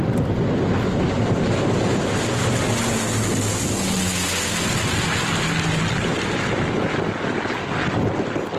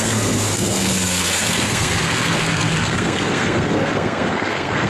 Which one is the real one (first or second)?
first